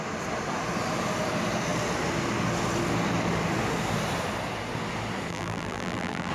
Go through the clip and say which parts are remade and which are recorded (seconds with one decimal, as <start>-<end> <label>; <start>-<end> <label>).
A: 0.0-5.3 recorded; 5.3-6.3 remade